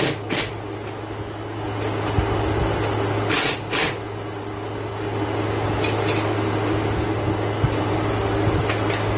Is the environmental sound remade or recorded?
recorded